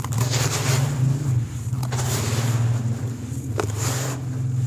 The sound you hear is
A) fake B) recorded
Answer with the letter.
B